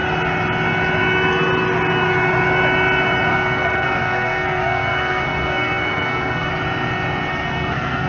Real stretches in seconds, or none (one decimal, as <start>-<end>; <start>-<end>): 0.0-3.3; 6.5-7.3